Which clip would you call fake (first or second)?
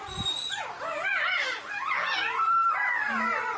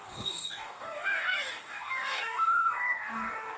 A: second